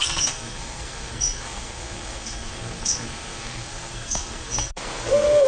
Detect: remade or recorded remade